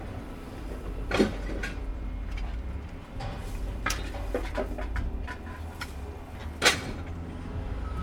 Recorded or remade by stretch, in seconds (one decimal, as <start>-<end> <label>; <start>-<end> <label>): 0.0-6.4 remade; 6.4-8.0 recorded